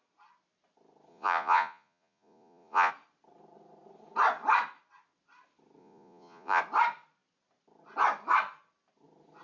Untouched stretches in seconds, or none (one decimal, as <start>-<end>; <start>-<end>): 0.0-1.1; 2.9-5.8; 6.6-9.4